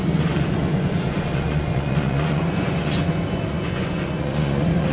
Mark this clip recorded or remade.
remade